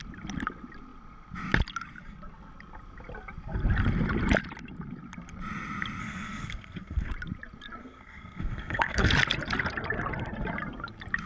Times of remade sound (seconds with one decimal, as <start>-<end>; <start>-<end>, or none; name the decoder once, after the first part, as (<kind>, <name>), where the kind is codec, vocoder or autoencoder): 6.0-7.1 (codec, SNAC); 7.8-9.1